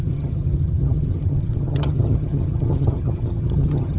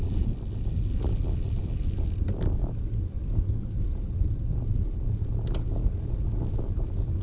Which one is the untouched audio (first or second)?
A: second